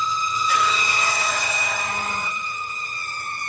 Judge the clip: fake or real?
fake